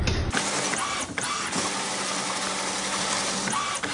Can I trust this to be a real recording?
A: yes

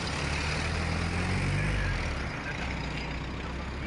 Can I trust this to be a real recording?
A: yes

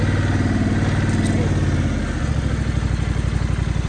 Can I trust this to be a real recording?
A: yes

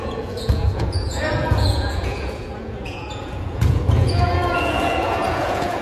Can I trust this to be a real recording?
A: no